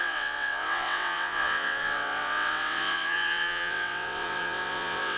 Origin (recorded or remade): remade